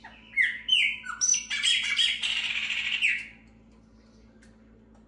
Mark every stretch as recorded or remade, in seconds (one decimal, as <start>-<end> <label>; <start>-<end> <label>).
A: 0.0-5.1 recorded